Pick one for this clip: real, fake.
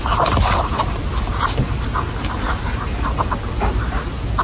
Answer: real